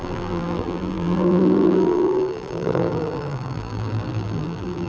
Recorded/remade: remade